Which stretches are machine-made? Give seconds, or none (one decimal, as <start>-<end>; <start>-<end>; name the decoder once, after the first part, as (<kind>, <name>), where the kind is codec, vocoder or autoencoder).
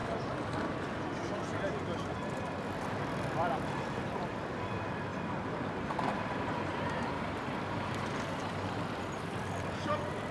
0.0-6.7 (vocoder, BigVGAN v2); 8.5-10.3